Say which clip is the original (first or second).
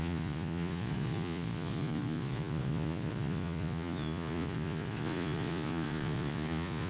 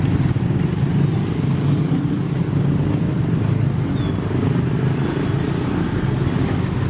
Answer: second